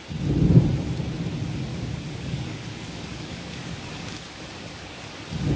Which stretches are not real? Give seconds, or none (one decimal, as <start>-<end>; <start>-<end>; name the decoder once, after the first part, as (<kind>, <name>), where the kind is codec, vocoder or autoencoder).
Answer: 1.7-5.1 (codec, DAC)